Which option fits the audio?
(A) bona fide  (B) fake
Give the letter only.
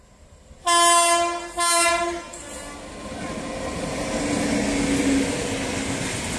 A